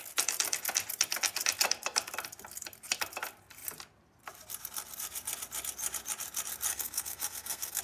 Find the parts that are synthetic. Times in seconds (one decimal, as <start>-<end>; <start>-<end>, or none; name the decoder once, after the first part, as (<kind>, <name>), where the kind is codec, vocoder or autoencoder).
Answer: 6.7-7.8 (codec, SNAC)